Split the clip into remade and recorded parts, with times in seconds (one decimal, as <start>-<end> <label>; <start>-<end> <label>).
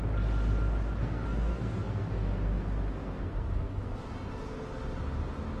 0.0-1.0 recorded; 1.0-4.1 remade; 4.1-5.6 recorded